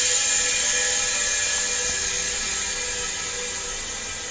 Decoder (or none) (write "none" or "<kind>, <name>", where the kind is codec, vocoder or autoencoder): none